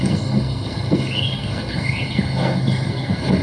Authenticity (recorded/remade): remade